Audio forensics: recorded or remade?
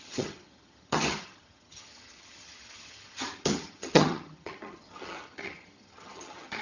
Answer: remade